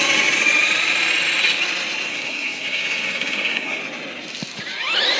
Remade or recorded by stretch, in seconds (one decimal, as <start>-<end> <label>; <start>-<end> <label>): 0.0-2.1 recorded; 2.1-3.8 remade; 3.8-5.2 recorded